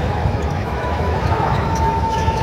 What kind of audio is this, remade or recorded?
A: remade